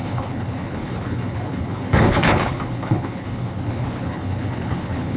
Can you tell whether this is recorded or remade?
remade